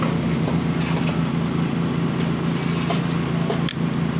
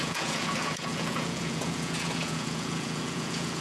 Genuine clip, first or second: first